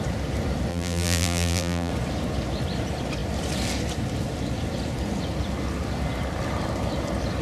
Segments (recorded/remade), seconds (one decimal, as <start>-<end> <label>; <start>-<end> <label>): 0.0-0.7 recorded; 0.7-1.9 remade; 1.9-7.4 recorded